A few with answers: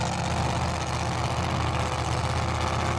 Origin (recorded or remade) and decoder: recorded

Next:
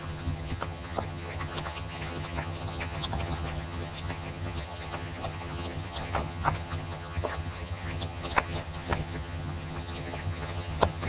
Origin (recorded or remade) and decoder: remade, vocoder, HiFi-GAN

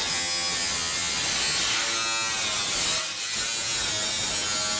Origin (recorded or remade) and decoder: recorded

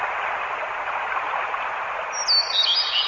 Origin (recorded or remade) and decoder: recorded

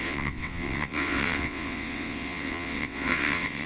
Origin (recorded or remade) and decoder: remade, vocoder, WaveNeXt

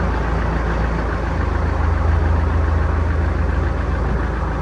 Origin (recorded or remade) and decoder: recorded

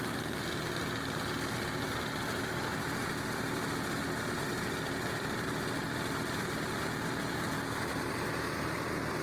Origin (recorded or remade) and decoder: recorded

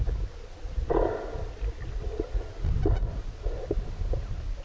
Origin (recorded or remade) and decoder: recorded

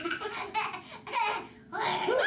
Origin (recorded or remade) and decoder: recorded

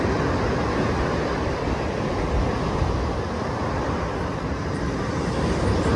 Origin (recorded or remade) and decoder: recorded